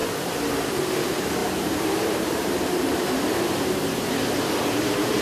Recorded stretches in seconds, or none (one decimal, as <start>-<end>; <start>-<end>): 0.0-0.7